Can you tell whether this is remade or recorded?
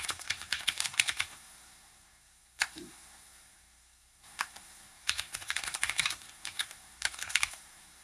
remade